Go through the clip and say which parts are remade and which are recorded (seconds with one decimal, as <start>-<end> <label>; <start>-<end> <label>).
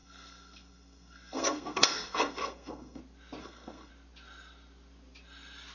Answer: 0.0-3.0 remade; 3.0-3.4 recorded; 3.4-3.9 remade; 3.9-5.7 recorded